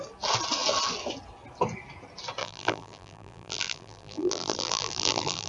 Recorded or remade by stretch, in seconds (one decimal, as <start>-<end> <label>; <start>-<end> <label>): 0.0-2.4 recorded; 2.4-5.5 remade